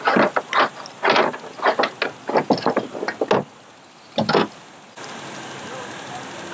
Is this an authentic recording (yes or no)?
yes